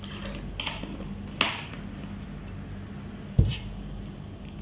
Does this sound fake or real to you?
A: real